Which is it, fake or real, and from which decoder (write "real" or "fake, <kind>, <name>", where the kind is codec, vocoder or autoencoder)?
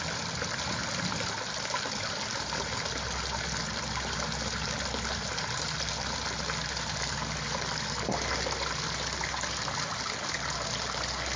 real